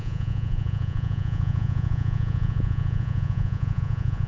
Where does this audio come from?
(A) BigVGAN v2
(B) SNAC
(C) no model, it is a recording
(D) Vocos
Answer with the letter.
D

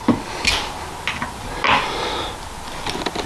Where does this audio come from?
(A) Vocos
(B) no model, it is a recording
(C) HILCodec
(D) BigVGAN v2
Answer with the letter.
B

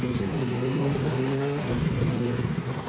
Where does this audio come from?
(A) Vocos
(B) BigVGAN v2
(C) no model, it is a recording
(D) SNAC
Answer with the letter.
D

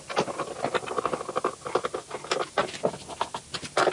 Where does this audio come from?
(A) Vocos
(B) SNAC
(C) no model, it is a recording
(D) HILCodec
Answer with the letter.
C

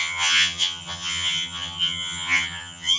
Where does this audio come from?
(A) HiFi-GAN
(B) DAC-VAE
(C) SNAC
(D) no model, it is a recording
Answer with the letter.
A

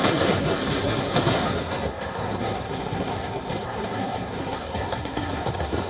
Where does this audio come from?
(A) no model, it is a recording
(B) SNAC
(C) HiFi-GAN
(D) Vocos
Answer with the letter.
B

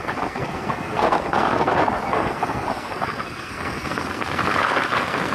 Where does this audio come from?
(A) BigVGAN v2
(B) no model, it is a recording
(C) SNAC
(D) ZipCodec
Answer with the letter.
C